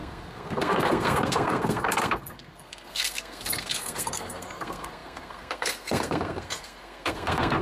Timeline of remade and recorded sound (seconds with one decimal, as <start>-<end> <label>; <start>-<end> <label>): 0.0-7.6 remade